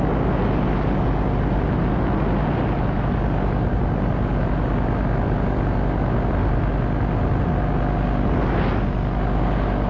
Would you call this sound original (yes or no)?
yes